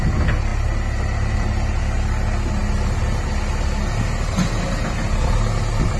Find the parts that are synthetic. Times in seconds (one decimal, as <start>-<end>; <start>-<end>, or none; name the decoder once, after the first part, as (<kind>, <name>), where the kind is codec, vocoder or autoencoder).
none